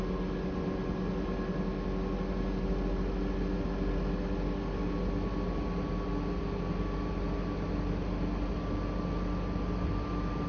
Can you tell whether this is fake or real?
real